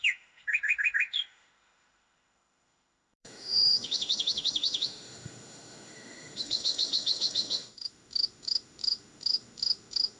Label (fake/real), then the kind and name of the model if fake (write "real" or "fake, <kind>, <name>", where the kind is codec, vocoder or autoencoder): fake, autoencoder, DAC-VAE